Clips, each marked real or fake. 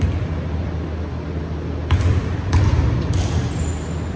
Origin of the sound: real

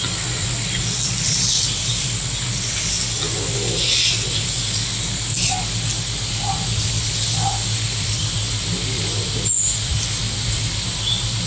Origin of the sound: real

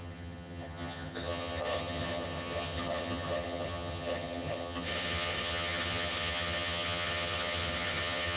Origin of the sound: fake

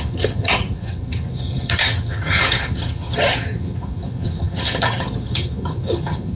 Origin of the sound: fake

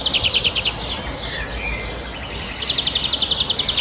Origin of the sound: real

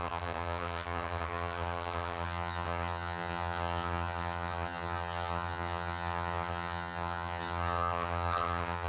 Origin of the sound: fake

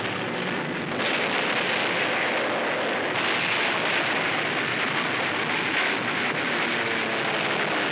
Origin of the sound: real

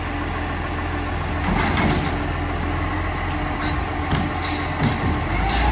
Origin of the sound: real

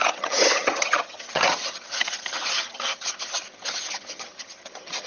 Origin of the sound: fake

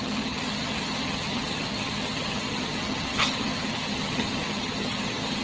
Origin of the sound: fake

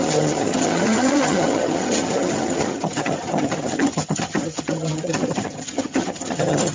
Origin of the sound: fake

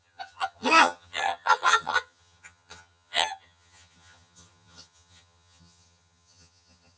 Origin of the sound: fake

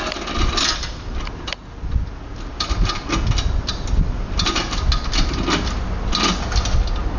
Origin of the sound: real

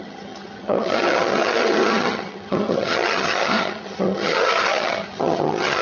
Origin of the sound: fake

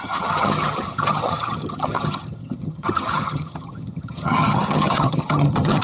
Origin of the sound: fake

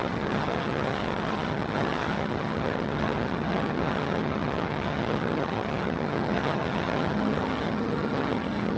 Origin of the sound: fake